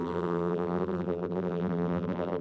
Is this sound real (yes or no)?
no